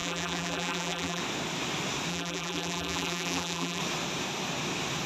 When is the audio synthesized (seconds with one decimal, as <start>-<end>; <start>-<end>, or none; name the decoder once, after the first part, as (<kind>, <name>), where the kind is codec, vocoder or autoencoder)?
0.0-1.2 (vocoder, BigVGAN v2); 2.1-3.8